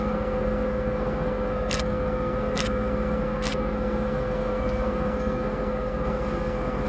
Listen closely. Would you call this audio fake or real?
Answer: fake